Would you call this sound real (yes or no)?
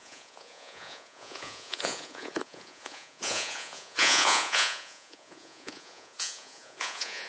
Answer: no